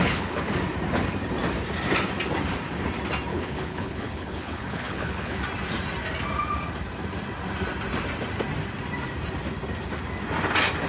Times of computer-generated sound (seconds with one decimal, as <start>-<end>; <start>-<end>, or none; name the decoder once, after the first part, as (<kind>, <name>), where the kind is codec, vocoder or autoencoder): 0.0-0.5 (codec, HILCodec); 3.3-5.4